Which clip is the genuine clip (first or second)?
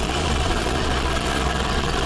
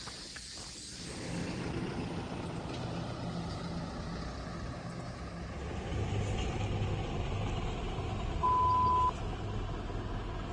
second